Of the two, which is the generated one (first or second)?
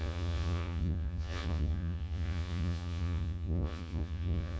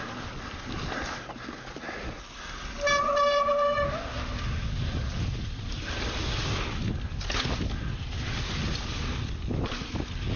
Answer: first